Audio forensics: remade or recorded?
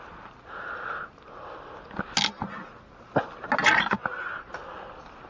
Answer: recorded